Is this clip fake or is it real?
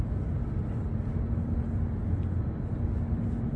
real